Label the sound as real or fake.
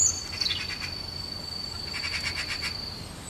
real